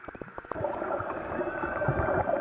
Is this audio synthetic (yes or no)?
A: yes